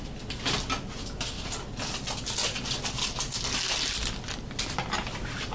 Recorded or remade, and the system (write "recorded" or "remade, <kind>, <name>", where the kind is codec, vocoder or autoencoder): recorded